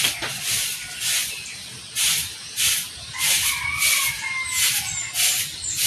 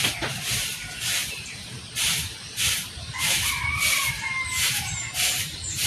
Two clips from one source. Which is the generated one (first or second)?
second